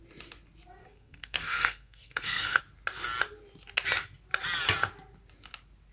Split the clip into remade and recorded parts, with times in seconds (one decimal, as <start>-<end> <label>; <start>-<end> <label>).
0.0-0.8 recorded; 0.8-2.6 remade; 2.6-5.9 recorded